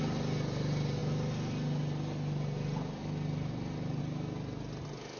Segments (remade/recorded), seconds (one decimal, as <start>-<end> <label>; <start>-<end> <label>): 0.0-5.2 recorded